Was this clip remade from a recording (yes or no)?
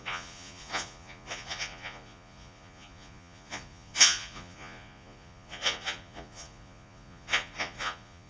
yes